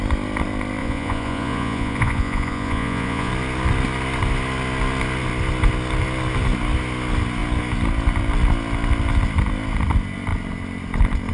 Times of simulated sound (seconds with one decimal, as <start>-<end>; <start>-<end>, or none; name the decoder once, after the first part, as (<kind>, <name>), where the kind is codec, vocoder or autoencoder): 0.8-3.3 (vocoder, Vocos)